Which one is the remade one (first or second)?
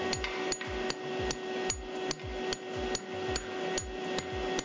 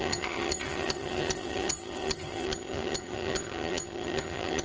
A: second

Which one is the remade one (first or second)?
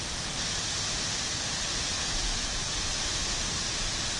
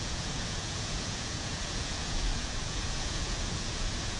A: second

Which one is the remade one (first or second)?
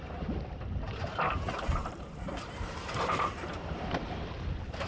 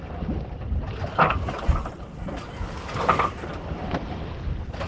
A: first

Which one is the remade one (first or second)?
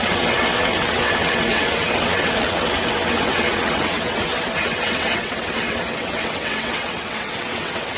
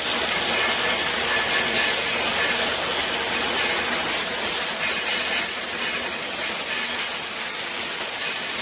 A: first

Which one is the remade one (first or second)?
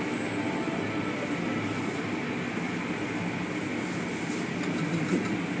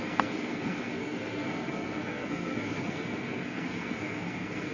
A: second